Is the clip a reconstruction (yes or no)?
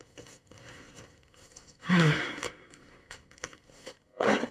yes